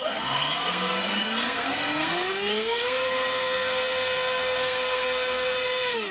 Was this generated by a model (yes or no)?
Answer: yes